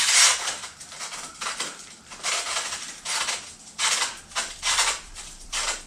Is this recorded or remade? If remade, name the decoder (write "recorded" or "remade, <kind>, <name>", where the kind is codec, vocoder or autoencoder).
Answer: remade, vocoder, BigVGAN v2